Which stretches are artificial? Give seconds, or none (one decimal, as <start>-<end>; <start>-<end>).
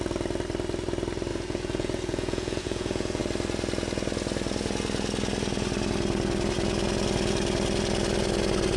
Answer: 1.3-3.2